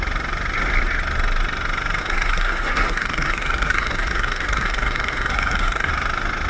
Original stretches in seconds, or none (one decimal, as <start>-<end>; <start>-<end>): 0.0-2.0; 5.9-6.5